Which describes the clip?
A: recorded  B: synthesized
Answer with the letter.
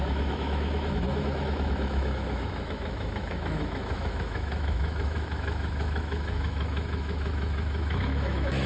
B